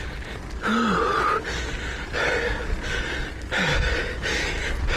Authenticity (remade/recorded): recorded